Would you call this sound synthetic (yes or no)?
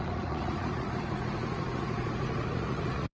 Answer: yes